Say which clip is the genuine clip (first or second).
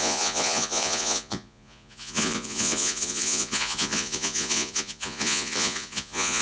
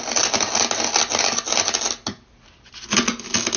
second